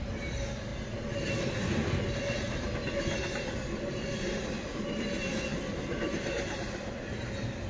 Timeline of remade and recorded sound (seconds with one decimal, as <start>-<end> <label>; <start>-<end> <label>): 0.0-7.7 recorded